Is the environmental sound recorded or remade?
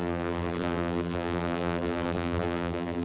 remade